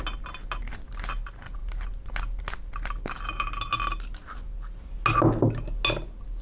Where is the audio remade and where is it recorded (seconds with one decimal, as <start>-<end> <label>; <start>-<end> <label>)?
0.0-6.4 recorded